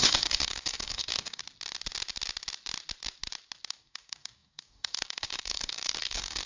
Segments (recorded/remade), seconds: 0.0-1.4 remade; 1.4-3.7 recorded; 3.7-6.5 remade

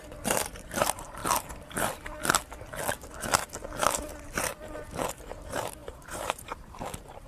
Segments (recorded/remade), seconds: 0.0-1.2 remade; 1.2-5.1 recorded; 5.1-7.3 remade